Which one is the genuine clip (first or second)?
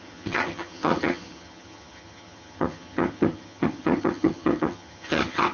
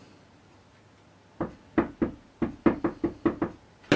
second